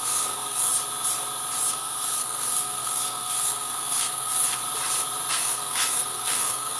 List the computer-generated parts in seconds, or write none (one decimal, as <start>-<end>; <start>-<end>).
0.0-0.7; 1.7-4.6; 5.3-6.8